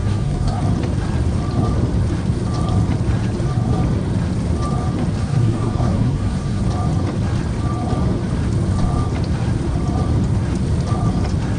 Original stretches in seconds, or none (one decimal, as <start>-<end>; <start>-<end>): 0.6-5.2; 6.6-11.6